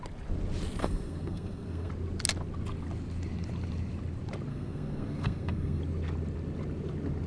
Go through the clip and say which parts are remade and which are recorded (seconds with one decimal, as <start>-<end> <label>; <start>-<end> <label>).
0.0-0.8 recorded; 0.8-1.9 remade; 1.9-4.5 recorded; 4.5-5.8 remade; 5.8-7.3 recorded